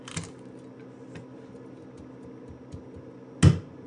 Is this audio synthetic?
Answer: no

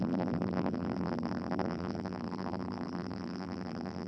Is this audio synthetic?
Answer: yes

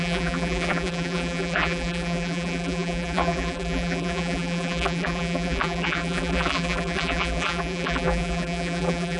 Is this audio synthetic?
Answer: yes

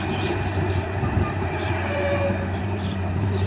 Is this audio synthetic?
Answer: yes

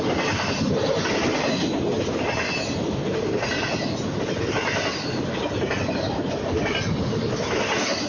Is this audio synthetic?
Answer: no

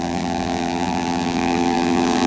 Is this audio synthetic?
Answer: yes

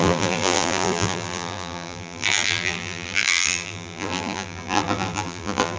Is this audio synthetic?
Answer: yes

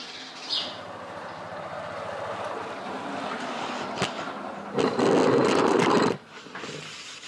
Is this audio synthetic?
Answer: no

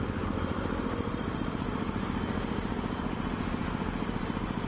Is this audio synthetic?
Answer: yes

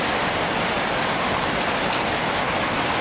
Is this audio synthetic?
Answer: no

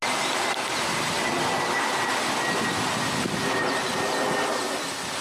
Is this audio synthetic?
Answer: no